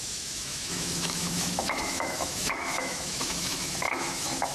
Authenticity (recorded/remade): remade